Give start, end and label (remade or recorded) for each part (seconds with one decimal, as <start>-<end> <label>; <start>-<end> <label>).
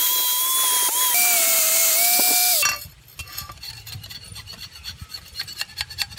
0.0-6.2 recorded